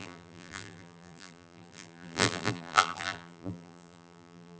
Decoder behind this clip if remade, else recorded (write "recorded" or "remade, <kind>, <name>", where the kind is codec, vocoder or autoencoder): remade, vocoder, BigVGAN v2